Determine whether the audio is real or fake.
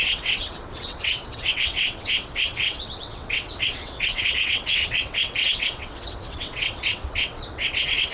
fake